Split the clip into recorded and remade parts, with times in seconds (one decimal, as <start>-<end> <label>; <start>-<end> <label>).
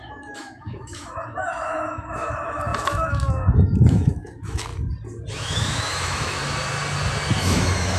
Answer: 0.0-4.7 remade; 4.7-5.3 recorded; 5.3-6.4 remade; 6.4-7.4 recorded; 7.4-8.0 remade